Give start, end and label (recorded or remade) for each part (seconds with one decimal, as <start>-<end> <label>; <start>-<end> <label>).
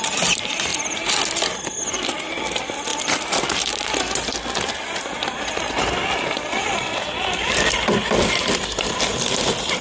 0.0-9.8 recorded